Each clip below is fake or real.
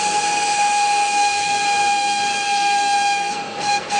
fake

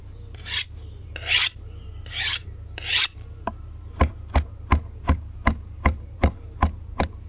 fake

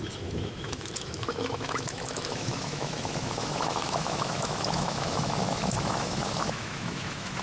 fake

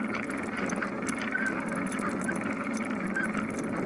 real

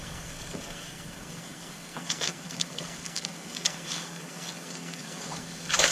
fake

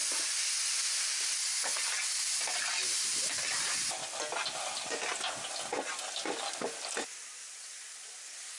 real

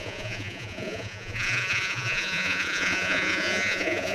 fake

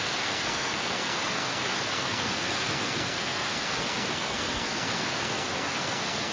fake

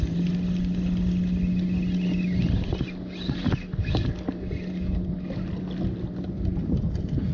real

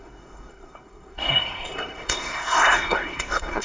fake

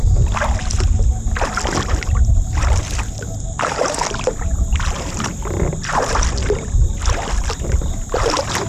real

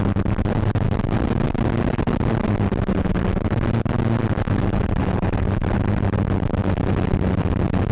real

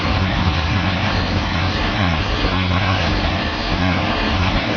fake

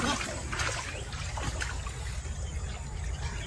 real